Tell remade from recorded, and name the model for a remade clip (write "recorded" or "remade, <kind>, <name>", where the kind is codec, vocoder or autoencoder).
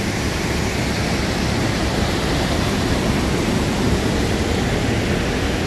recorded